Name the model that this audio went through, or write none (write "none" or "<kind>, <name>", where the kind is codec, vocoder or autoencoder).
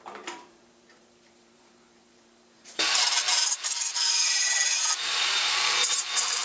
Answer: vocoder, BigVGAN v2